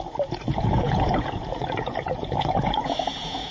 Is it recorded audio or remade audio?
remade